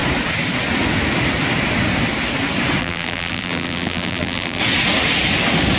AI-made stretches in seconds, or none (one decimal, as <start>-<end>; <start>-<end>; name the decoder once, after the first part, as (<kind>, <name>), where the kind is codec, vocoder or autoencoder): 2.8-4.6 (vocoder, BigVGAN v2)